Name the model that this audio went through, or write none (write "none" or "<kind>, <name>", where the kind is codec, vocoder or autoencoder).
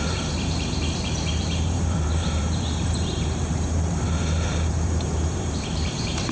vocoder, BigVGAN v2